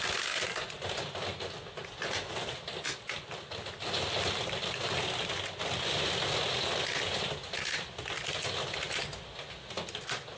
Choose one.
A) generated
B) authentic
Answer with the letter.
B